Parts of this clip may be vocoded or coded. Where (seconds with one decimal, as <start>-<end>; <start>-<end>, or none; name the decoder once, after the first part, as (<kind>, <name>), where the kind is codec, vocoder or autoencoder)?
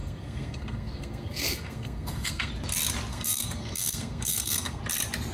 0.0-2.5 (codec, SNAC); 3.1-4.8